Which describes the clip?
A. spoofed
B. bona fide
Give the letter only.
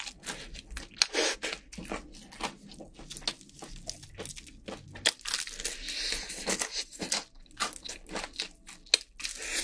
B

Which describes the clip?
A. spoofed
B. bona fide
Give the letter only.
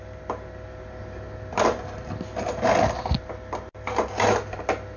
B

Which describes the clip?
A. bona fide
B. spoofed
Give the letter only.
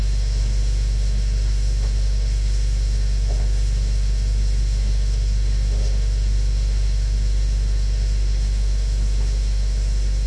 B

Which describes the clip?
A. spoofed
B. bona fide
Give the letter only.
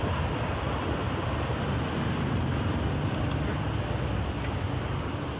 B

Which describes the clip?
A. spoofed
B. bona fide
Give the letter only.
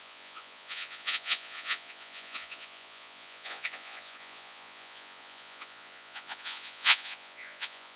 A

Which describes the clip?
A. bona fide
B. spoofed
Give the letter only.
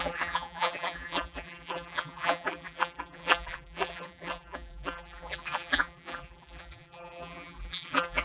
B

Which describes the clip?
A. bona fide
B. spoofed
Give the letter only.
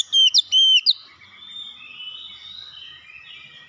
A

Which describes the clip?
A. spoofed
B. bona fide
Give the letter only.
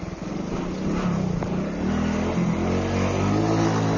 B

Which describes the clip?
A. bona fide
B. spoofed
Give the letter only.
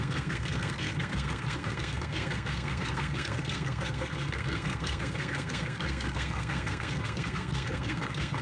B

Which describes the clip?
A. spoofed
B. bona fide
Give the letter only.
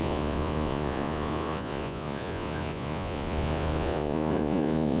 A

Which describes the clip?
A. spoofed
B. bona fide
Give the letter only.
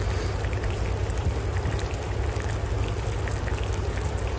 B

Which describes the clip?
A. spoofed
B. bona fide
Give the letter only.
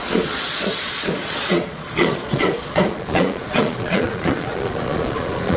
A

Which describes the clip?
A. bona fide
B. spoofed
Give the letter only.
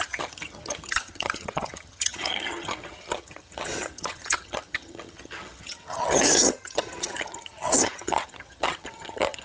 B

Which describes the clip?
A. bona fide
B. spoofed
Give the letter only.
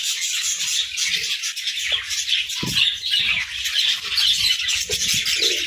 A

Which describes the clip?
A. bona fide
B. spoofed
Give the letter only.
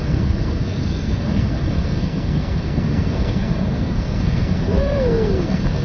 B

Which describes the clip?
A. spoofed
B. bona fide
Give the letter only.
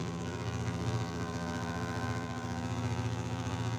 A